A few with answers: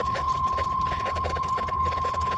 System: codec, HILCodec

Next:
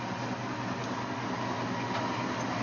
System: none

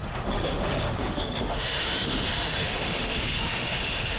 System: autoencoder, DAC-VAE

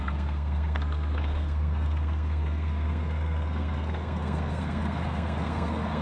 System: codec, SNAC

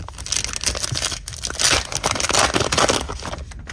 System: none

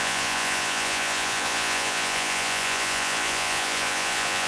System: vocoder, Vocos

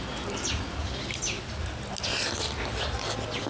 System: none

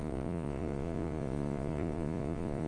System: vocoder, Vocos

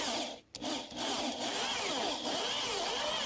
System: none